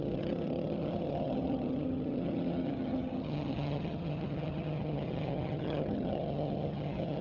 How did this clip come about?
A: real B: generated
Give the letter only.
B